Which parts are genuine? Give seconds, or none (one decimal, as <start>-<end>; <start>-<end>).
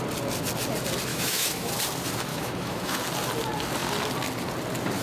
0.0-1.1; 1.7-2.3; 3.0-5.0